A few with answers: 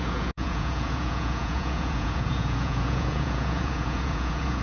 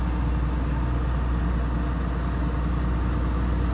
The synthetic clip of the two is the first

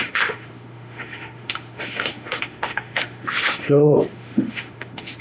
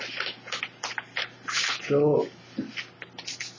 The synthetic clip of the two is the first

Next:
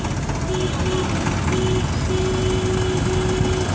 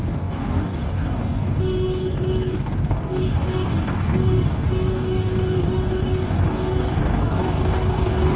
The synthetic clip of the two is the second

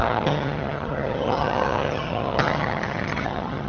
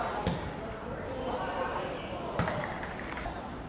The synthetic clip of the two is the first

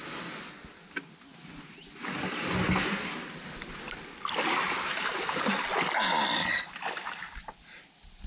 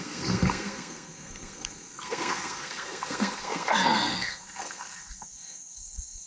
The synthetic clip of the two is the second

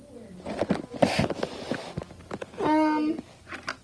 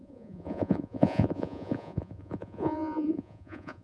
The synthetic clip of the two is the second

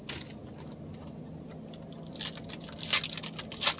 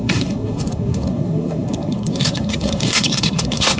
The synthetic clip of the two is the second